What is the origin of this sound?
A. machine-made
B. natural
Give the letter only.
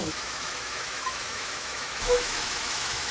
A